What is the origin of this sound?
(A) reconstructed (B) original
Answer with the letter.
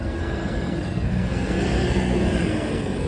A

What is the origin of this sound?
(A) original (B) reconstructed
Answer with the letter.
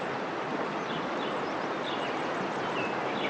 A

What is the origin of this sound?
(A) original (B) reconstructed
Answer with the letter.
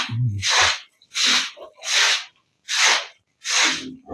A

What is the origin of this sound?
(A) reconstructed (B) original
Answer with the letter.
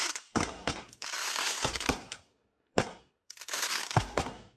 A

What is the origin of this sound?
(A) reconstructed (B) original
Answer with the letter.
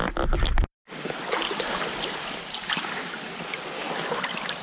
B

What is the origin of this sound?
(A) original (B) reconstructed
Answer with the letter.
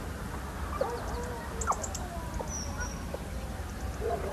A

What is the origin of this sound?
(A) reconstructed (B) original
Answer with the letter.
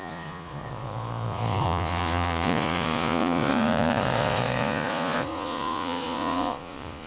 A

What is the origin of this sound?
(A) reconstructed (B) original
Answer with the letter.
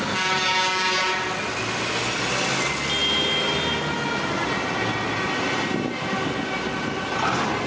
B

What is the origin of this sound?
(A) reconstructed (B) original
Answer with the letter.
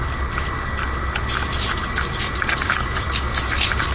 B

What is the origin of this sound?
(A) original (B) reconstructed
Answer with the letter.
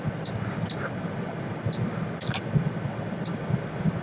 A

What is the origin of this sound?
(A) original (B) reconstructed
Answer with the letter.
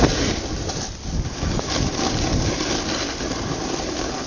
A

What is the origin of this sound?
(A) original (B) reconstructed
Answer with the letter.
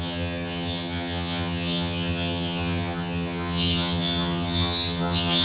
B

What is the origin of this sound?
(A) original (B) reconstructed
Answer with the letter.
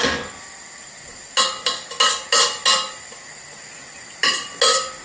A